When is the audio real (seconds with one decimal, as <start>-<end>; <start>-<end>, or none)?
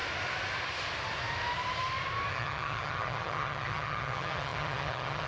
0.0-2.3